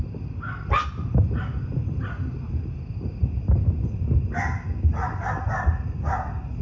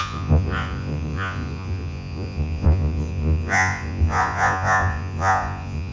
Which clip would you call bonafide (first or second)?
first